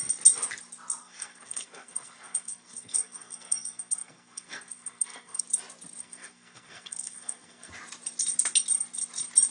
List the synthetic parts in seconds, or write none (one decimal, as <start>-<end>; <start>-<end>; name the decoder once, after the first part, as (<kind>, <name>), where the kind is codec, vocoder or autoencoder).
1.0-5.4 (codec, SNAC); 6.0-7.7